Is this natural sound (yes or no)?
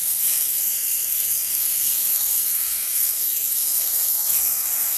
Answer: no